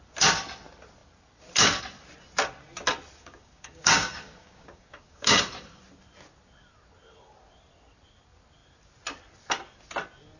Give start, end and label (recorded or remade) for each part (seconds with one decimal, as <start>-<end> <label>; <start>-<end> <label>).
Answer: 0.0-3.2 recorded; 3.2-5.4 remade; 5.4-10.4 recorded